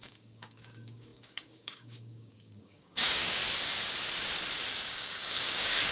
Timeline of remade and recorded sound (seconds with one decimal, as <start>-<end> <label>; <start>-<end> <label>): 0.0-3.4 remade; 3.4-4.7 recorded; 4.7-5.9 remade

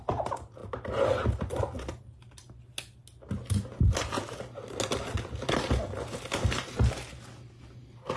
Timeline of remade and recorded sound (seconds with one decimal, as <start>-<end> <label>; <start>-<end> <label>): 0.0-8.2 recorded